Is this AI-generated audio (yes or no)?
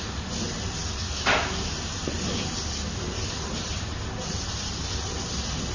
no